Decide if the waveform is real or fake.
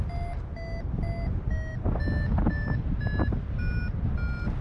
real